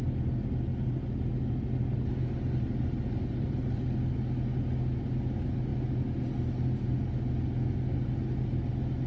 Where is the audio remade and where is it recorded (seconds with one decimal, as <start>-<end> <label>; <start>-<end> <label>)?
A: 0.0-9.1 recorded